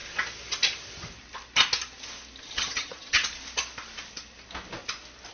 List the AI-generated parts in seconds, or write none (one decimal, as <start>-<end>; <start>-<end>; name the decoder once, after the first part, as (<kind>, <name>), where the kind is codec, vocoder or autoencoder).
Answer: 2.4-3.2 (vocoder, HiFi-GAN)